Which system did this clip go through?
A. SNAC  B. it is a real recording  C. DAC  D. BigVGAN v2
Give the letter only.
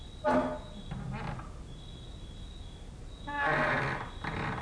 B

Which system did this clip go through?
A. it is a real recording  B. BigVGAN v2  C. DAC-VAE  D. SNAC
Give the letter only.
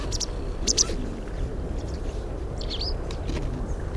B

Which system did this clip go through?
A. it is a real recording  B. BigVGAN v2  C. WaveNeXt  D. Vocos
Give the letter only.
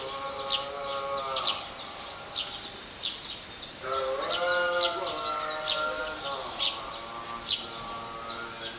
A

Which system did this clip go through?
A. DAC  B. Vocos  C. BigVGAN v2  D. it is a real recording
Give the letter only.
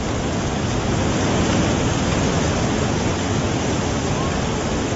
D